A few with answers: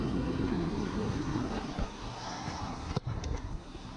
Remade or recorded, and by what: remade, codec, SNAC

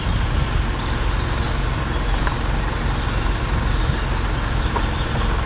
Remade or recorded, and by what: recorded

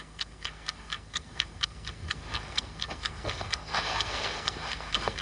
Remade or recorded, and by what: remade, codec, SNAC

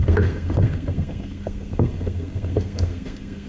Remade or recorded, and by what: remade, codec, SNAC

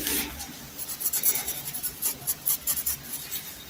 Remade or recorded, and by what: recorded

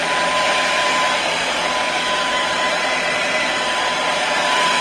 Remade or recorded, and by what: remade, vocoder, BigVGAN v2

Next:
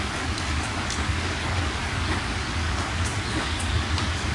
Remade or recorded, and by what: remade, codec, DAC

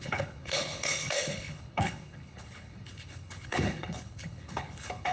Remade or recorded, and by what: remade, codec, HILCodec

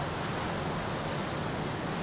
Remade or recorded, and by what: recorded